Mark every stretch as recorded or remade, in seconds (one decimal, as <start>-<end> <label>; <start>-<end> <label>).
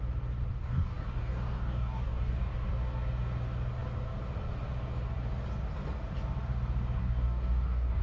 0.0-0.5 recorded; 0.5-2.5 remade; 2.5-7.0 recorded; 7.0-8.0 remade